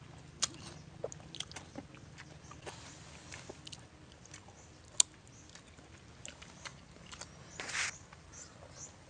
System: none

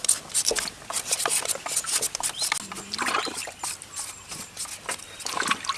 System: none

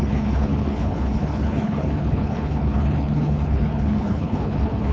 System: codec, HILCodec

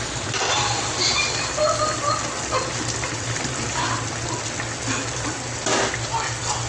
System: none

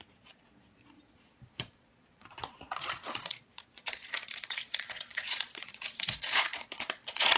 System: vocoder, Vocos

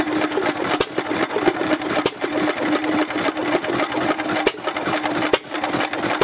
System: none